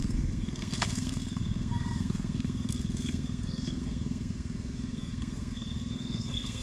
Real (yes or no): no